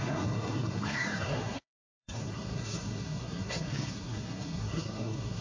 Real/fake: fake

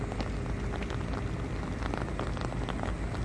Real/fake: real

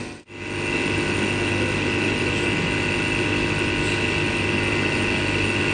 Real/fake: real